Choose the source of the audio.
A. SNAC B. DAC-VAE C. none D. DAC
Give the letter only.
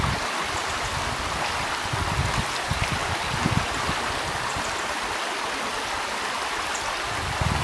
C